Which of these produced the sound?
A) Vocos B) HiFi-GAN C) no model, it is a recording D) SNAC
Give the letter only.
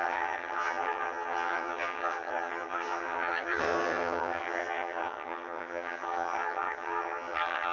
B